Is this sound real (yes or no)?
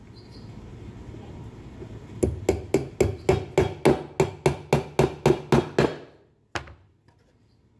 yes